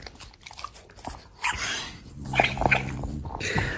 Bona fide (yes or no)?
yes